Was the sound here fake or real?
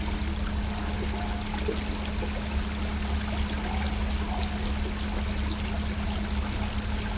real